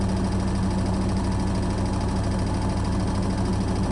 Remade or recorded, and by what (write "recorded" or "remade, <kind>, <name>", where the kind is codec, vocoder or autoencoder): recorded